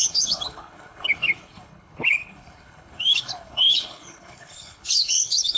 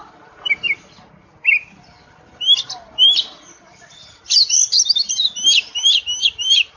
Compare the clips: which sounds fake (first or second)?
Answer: first